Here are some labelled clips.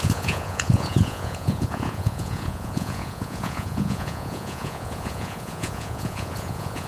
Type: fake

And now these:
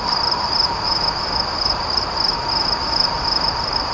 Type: real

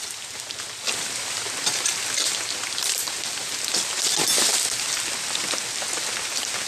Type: real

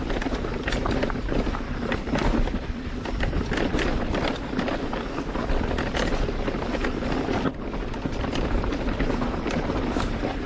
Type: real